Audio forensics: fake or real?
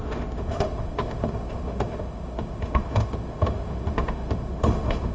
fake